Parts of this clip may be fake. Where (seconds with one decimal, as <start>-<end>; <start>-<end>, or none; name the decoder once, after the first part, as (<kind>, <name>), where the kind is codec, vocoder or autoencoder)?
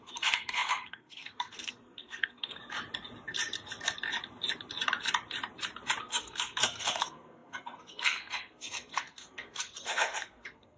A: 0.0-2.6 (codec, SNAC); 6.0-10.8